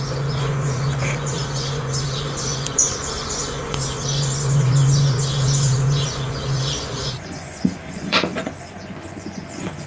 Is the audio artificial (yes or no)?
yes